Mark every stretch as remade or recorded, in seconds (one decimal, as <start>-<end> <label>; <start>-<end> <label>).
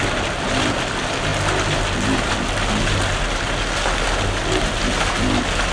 0.0-5.7 recorded